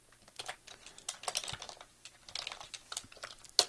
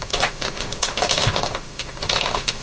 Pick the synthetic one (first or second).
second